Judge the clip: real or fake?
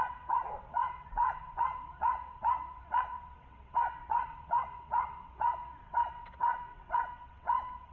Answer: fake